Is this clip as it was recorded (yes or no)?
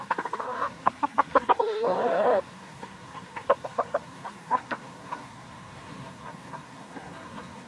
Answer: no